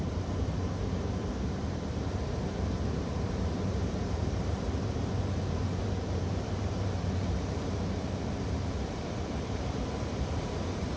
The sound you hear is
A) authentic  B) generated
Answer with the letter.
B